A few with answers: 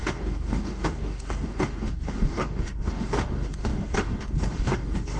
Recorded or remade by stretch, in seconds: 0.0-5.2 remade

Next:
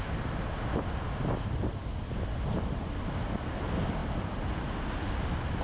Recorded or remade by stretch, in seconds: 0.0-5.6 recorded